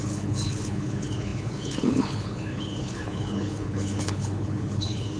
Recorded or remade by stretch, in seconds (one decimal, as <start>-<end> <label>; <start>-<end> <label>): 0.0-5.2 remade